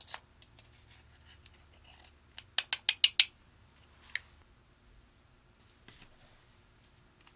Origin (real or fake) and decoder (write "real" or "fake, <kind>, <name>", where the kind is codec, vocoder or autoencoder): real